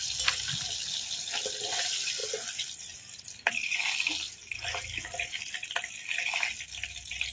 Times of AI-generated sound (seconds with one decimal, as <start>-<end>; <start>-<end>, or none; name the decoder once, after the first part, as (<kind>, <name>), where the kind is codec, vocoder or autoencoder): none